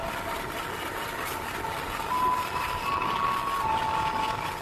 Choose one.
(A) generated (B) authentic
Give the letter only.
B